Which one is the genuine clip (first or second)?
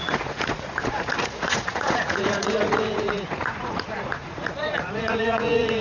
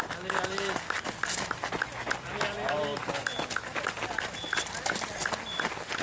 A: second